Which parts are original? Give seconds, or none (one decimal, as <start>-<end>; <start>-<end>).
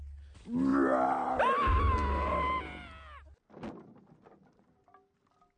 0.0-5.6